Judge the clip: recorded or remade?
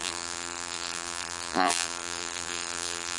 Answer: remade